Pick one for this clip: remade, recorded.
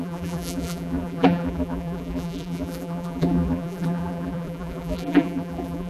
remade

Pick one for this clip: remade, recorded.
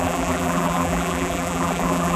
remade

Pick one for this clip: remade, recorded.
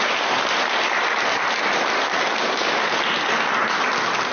recorded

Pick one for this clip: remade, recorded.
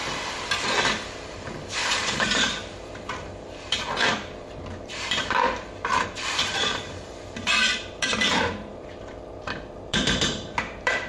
remade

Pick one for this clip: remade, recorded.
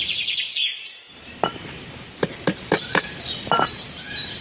remade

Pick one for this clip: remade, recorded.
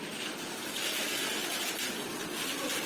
recorded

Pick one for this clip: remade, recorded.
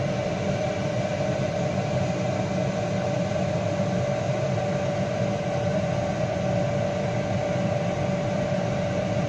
recorded